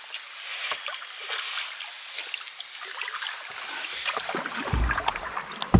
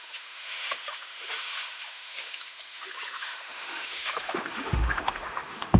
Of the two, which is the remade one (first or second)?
second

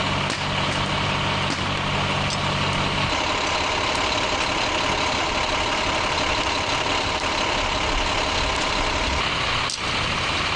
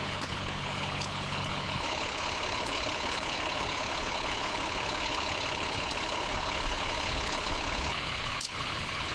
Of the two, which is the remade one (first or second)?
second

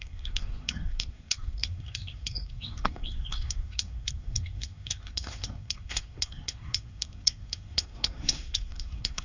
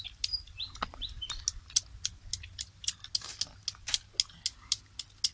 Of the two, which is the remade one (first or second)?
first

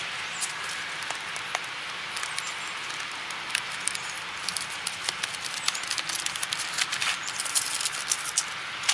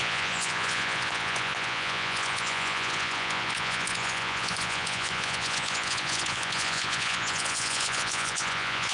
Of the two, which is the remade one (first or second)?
second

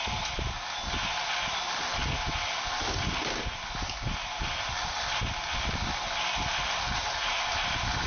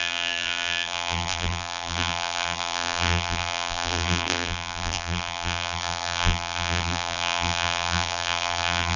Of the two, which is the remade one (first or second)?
second